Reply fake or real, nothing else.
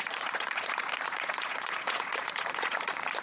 fake